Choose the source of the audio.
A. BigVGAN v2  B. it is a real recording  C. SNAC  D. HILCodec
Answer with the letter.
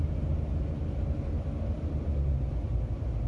B